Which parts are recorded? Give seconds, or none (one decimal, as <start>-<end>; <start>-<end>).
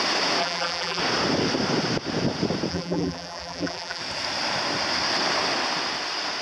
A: 0.0-0.4; 1.0-2.7; 4.0-6.4